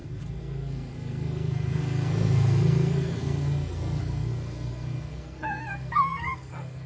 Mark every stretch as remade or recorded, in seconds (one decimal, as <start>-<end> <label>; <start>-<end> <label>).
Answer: 0.0-6.9 remade